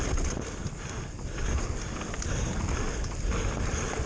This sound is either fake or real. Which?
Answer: real